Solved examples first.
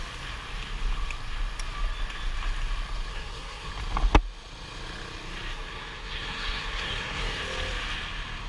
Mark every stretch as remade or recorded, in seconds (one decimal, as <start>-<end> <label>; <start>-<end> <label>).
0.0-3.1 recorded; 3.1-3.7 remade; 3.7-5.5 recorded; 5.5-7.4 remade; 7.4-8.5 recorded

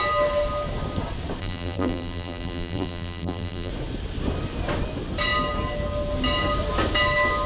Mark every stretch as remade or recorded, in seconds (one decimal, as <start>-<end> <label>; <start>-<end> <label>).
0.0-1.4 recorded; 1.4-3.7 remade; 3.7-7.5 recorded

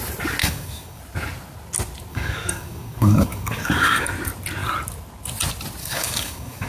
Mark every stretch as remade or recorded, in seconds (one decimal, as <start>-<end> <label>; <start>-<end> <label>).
0.0-0.4 recorded; 0.4-1.0 remade; 1.0-2.1 recorded; 2.1-4.1 remade; 4.1-5.8 recorded; 5.8-6.7 remade

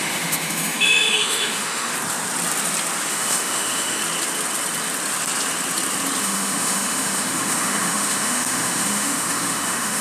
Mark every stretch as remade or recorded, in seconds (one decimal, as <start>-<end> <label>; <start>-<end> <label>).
0.0-1.9 remade; 1.9-3.1 recorded; 3.1-4.0 remade; 4.0-6.2 recorded; 6.2-10.0 remade

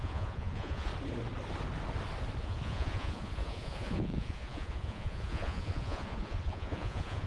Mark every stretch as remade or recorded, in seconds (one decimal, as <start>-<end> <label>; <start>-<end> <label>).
0.0-0.9 remade; 0.9-2.4 recorded; 2.4-7.3 remade

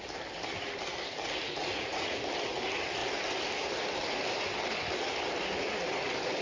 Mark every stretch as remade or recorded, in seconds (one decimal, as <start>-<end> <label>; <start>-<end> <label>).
0.0-1.6 recorded; 1.6-2.2 remade; 2.2-6.4 recorded